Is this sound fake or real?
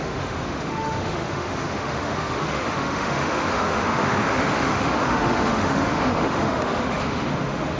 fake